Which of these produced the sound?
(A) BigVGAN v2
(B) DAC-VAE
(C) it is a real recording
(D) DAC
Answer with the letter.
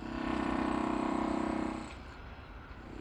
C